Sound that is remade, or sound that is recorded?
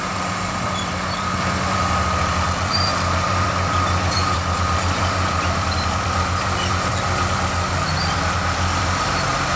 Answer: remade